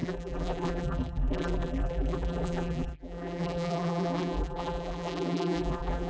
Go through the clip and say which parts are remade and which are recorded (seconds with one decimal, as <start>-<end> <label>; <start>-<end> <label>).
0.0-6.1 remade